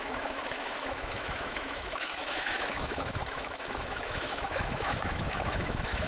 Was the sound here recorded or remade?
remade